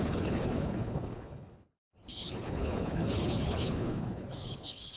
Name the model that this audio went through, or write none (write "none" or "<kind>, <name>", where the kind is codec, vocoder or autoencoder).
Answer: codec, HILCodec